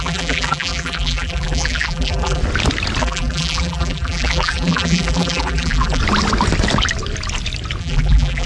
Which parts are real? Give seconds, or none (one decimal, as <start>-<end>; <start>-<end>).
2.4-3.0; 6.0-7.8